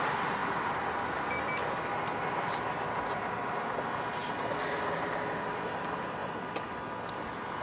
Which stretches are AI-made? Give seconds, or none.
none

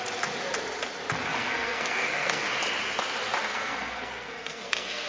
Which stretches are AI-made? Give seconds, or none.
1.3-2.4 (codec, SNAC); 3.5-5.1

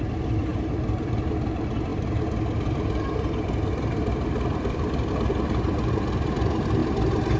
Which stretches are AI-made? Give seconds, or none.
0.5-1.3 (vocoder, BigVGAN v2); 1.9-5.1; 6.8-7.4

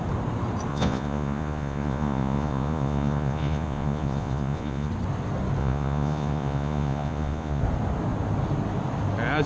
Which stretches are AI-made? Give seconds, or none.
0.7-4.9 (vocoder, Vocos); 5.6-7.6

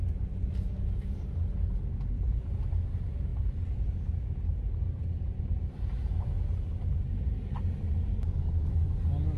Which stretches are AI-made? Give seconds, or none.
none

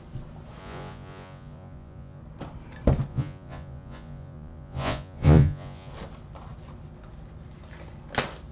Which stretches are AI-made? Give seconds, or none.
0.6-2.2 (vocoder, Vocos); 3.1-5.9

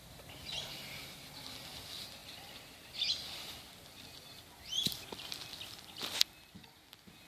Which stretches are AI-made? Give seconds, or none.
none

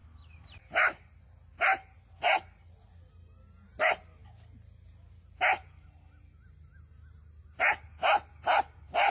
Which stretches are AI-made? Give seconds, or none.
none